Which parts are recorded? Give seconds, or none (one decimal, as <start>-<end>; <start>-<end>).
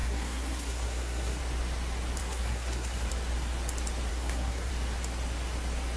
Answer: 1.4-2.2; 3.1-4.1; 4.7-6.0